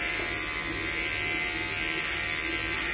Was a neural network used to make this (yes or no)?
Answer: no